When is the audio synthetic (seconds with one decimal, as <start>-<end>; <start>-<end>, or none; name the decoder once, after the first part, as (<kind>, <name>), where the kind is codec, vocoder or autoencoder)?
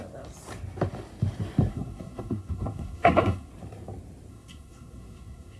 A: 1.7-3.5 (codec, SNAC); 4.3-5.6